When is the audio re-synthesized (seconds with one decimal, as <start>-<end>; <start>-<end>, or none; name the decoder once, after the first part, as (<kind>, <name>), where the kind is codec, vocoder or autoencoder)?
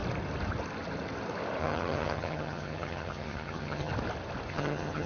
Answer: 1.6-3.9 (vocoder, HiFi-GAN); 4.5-5.1